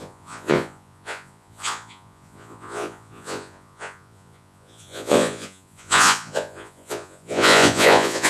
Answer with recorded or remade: remade